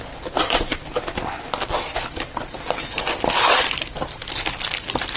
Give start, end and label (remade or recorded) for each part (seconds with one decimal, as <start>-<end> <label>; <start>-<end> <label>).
0.0-5.2 recorded